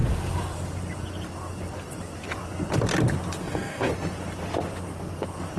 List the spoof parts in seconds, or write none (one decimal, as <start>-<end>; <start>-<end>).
3.4-3.9

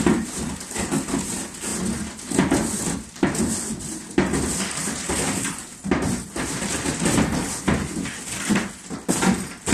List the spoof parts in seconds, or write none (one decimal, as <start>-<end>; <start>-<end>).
none